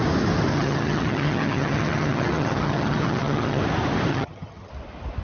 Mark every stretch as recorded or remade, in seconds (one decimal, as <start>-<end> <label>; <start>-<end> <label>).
0.0-0.5 recorded; 0.5-3.6 remade; 3.6-4.1 recorded; 4.1-4.7 remade; 4.7-5.2 recorded